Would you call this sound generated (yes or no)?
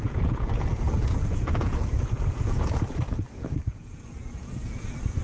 yes